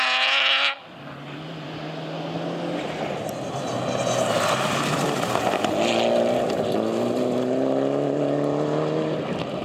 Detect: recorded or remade recorded